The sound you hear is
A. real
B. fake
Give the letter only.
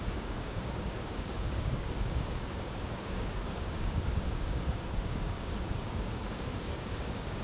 B